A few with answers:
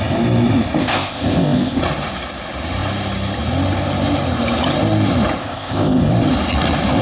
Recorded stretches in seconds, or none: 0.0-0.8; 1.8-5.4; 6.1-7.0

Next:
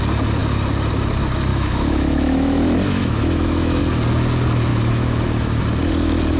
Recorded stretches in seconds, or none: 0.0-1.5; 3.8-4.7; 5.6-6.4